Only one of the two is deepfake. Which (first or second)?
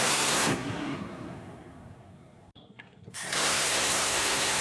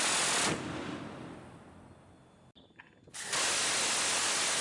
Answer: first